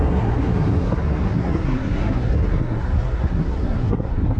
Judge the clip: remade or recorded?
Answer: remade